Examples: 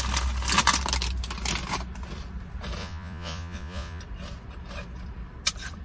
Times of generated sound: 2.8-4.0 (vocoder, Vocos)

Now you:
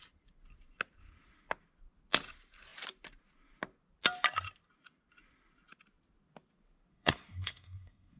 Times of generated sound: 6.9-8.2 (codec, SNAC)

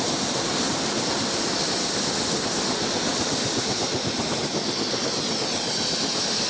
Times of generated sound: none

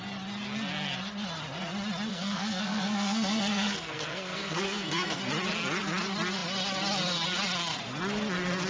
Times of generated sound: 2.1-5.2 (codec, SNAC)

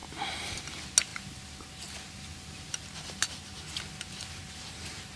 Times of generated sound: none

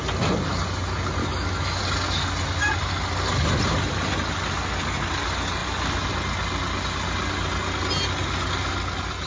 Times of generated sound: 1.2-1.8 (autoencoder, DAC-VAE)

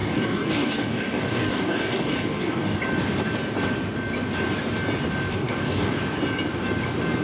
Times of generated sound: 0.0-2.8 (codec, DAC); 5.3-6.0

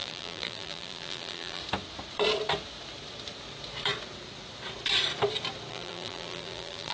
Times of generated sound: 0.0-1.6 (vocoder, BigVGAN v2); 5.7-6.9